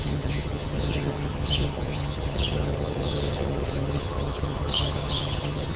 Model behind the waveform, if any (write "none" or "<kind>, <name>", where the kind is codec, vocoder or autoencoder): vocoder, HiFi-GAN